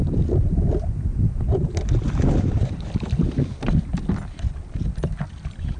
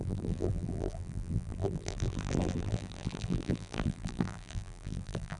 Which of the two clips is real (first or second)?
first